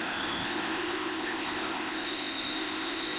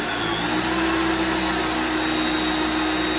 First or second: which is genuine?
second